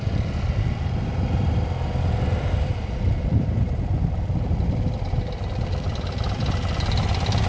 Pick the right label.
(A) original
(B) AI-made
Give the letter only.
A